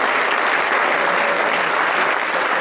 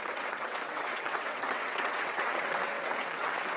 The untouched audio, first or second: first